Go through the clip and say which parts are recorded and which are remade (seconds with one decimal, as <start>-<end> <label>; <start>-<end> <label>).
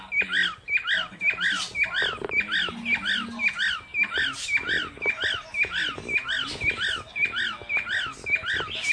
0.0-8.9 recorded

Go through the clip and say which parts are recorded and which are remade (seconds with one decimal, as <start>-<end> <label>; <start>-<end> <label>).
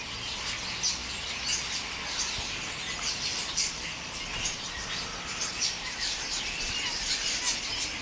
0.0-1.0 recorded; 1.0-2.0 remade; 2.0-3.3 recorded; 3.3-3.9 remade; 3.9-4.8 recorded; 4.8-7.4 remade; 7.4-8.0 recorded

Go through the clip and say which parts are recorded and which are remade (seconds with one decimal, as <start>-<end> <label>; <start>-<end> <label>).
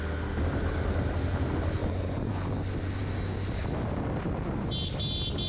0.0-1.8 recorded; 1.8-2.4 remade; 2.4-5.5 recorded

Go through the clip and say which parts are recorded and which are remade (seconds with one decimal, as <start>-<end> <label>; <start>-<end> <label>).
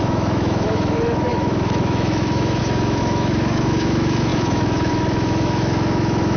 0.0-6.4 remade